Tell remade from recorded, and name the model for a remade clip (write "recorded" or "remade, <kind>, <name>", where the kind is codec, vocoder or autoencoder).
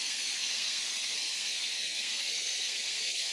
remade, codec, SNAC